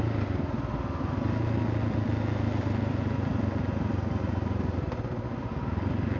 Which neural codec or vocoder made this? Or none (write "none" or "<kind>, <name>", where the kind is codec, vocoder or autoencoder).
none